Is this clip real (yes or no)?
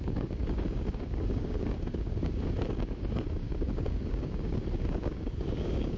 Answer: no